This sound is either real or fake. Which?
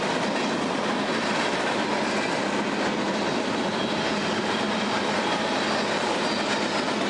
real